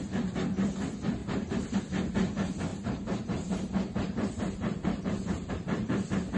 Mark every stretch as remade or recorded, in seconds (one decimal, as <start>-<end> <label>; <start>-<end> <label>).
0.0-1.2 recorded; 1.2-1.8 remade; 1.8-2.7 recorded; 2.7-5.5 remade; 5.5-6.4 recorded